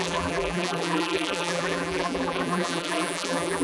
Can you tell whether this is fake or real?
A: fake